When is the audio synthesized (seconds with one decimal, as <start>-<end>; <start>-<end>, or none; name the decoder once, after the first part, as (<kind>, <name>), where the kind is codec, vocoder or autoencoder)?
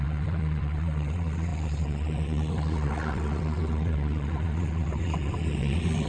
0.0-6.1 (vocoder, WaveNeXt)